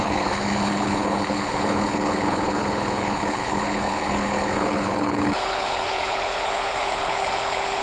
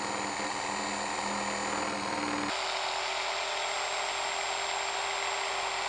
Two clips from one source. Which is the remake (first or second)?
first